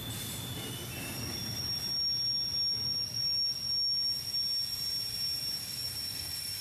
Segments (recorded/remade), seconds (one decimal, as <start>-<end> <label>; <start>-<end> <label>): 0.0-6.6 recorded